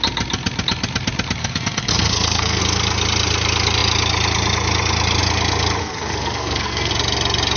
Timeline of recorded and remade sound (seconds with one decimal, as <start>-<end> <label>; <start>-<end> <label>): 0.0-1.4 recorded; 1.4-2.6 remade; 2.6-5.8 recorded; 5.8-6.9 remade; 6.9-7.6 recorded